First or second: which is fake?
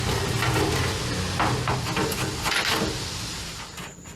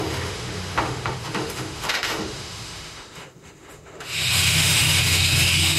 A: second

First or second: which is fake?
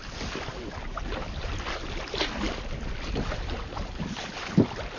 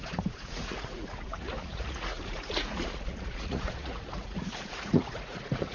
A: second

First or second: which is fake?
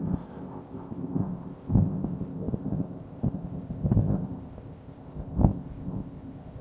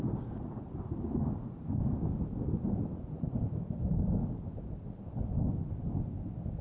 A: first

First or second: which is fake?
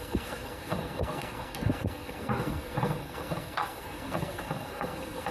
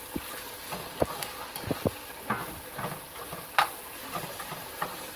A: first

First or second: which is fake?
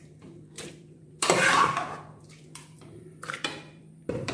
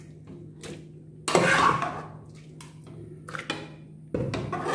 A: first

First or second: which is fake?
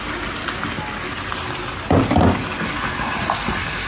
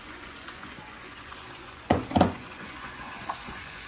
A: second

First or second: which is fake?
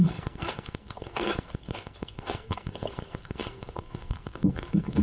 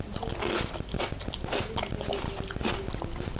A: first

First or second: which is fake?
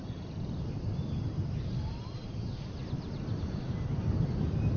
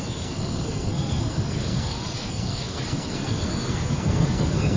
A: second